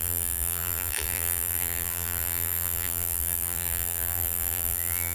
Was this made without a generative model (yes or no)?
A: no